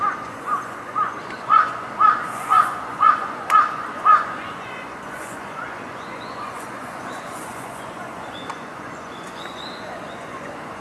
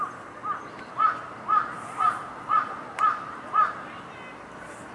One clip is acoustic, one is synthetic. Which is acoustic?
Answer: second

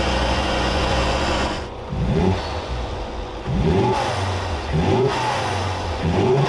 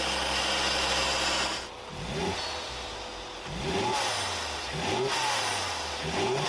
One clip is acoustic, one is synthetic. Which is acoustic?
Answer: second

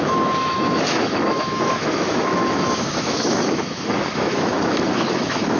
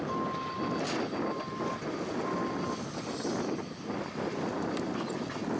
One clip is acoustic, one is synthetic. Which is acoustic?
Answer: second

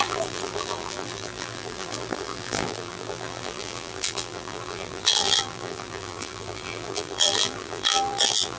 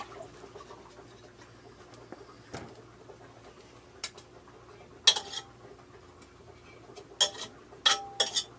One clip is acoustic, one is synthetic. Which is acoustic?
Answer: second